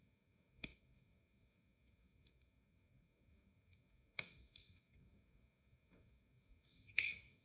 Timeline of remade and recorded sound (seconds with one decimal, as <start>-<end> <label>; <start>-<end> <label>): 0.0-7.4 remade